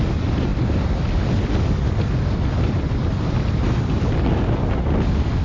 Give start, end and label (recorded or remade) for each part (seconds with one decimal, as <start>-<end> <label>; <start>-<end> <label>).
0.0-5.4 recorded

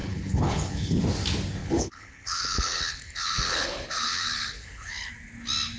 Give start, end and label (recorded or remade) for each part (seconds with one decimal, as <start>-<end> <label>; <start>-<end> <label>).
0.0-1.0 remade; 1.0-1.6 recorded; 1.6-5.1 remade; 5.1-5.8 recorded

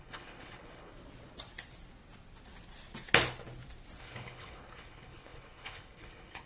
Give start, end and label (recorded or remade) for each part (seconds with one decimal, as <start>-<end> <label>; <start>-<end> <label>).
0.0-0.9 remade; 0.9-4.0 recorded; 4.0-6.5 remade

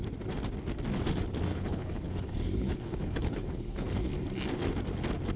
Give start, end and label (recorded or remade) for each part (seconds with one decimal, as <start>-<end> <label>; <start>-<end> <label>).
0.0-1.5 recorded; 1.5-4.1 remade; 4.1-5.4 recorded

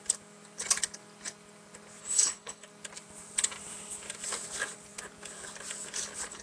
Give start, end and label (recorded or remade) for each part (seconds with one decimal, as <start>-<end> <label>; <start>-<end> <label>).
0.0-2.0 recorded; 2.0-2.7 remade; 2.7-6.4 recorded

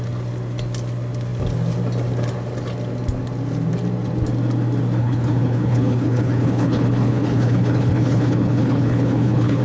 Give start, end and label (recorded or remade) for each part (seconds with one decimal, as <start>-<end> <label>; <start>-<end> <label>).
0.0-5.0 recorded; 5.0-9.6 remade